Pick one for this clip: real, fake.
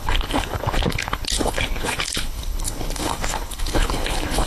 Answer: fake